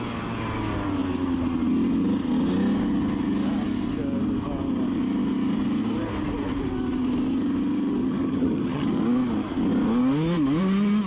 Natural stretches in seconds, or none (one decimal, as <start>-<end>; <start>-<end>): 0.0-8.0; 9.0-11.1